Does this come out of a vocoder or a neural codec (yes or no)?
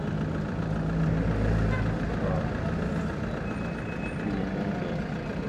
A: no